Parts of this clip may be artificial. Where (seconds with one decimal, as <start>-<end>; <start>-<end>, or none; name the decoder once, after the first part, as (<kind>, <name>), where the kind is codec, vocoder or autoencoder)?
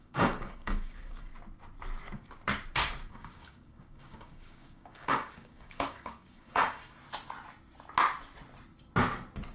0.0-1.3 (codec, DAC); 3.1-7.0